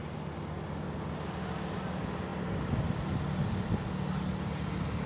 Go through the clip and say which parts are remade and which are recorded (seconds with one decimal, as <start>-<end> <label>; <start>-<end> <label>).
0.0-5.1 recorded